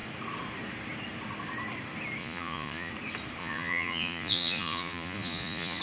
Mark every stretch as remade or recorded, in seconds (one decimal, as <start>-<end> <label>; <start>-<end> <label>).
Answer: 0.0-2.2 recorded; 2.2-2.9 remade; 2.9-3.4 recorded; 3.4-5.8 remade